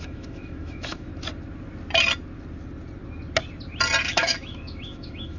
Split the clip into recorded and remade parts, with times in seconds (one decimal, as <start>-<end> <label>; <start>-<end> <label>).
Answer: 0.0-1.1 remade; 1.1-4.0 recorded; 4.0-5.4 remade